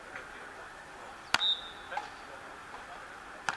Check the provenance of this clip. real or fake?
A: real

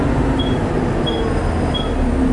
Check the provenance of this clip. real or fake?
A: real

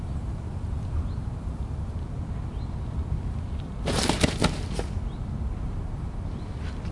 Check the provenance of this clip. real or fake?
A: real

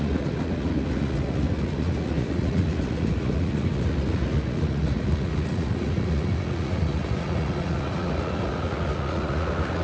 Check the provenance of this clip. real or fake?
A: fake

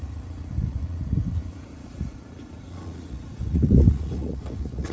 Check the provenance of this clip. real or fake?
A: fake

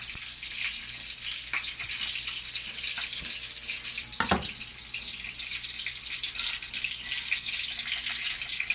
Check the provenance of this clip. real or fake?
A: real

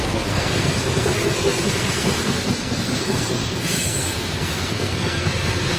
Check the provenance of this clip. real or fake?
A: fake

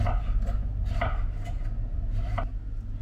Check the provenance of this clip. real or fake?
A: real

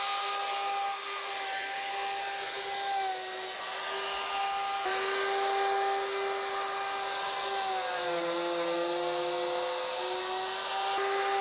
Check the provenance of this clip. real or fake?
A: real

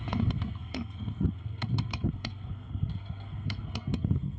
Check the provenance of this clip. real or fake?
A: fake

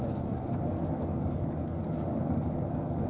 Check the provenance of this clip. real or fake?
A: fake